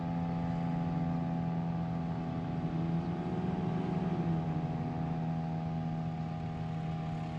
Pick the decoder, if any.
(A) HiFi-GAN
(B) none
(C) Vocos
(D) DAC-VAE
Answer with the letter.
B